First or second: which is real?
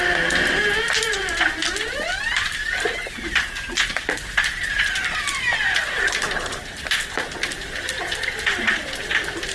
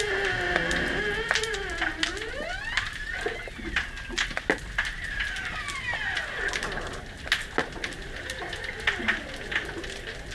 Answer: second